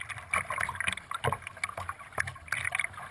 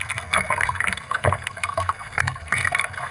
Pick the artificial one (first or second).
second